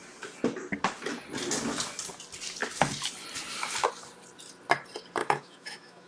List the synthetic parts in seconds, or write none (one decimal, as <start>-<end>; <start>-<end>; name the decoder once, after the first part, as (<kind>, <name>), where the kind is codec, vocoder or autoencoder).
5.2-6.1 (autoencoder, DAC-VAE)